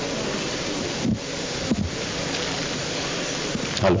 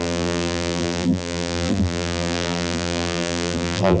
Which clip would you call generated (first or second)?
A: second